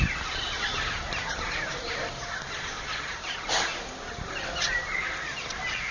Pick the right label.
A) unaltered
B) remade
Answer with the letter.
A